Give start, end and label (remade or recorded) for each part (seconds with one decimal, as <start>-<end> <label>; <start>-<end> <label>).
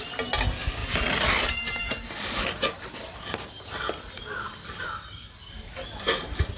0.0-6.6 recorded